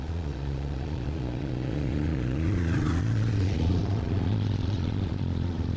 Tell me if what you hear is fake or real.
fake